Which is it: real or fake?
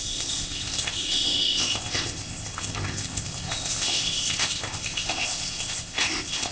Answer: fake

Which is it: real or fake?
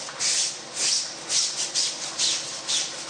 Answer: real